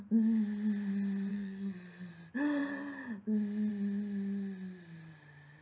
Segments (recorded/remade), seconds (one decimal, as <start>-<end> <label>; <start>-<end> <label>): 0.0-1.3 recorded; 1.3-2.1 remade; 2.1-5.6 recorded